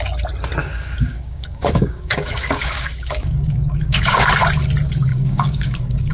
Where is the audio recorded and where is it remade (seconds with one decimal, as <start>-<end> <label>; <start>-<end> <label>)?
0.0-0.6 recorded; 0.6-4.3 remade; 4.3-5.1 recorded; 5.1-6.1 remade